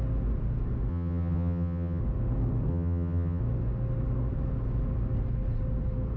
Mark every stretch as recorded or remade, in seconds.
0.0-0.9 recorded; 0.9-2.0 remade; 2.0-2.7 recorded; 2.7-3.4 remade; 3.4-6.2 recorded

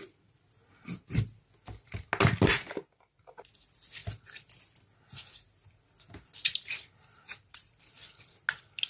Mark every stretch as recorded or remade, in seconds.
0.0-4.0 recorded; 4.0-4.5 remade; 4.5-6.4 recorded; 6.4-8.3 remade; 8.3-8.9 recorded

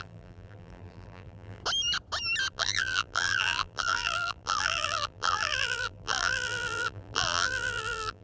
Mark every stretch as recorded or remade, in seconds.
0.0-1.6 remade; 1.6-2.5 recorded; 2.5-8.2 remade

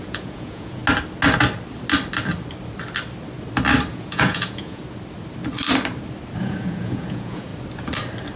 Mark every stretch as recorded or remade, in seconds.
0.0-0.8 remade; 0.8-3.9 recorded; 3.9-4.8 remade; 4.8-6.4 recorded; 6.4-7.5 remade; 7.5-8.4 recorded